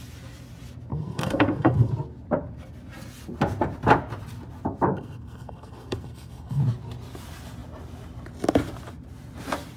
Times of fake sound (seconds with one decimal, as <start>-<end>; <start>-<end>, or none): 0.9-1.9; 4.9-6.6